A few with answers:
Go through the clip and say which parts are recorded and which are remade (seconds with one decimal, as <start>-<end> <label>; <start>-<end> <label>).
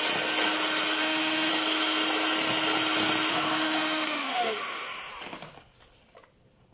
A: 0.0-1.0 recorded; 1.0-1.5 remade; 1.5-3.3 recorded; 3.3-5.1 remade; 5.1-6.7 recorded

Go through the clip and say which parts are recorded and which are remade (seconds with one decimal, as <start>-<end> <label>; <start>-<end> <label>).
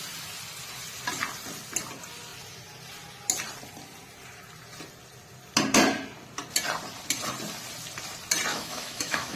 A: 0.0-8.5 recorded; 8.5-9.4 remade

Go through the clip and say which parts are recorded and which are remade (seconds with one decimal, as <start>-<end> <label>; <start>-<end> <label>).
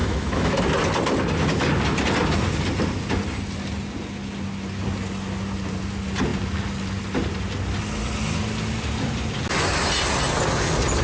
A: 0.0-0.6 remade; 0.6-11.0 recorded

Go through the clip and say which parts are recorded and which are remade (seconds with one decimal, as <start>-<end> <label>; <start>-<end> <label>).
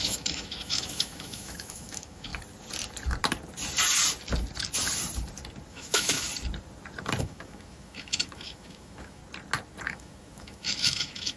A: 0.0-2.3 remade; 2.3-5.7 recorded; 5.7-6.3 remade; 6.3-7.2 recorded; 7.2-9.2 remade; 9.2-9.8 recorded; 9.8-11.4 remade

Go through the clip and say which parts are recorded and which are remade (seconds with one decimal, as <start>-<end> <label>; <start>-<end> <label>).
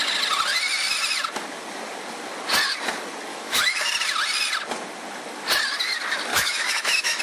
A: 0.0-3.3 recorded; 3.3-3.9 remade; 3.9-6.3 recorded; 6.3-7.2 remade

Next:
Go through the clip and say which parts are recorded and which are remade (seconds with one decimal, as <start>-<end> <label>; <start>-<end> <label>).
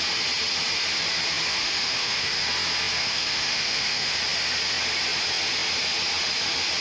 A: 0.0-1.6 recorded; 1.6-2.4 remade; 2.4-3.0 recorded; 3.0-4.2 remade; 4.2-6.8 recorded